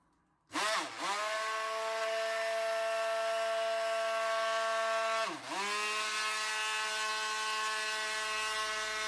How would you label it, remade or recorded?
recorded